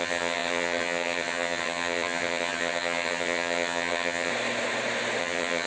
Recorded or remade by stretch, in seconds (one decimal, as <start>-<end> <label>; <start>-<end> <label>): 0.0-4.3 remade; 4.3-5.2 recorded; 5.2-5.7 remade